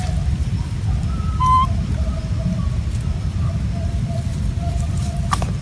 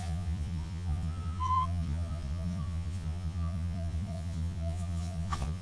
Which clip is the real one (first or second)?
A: first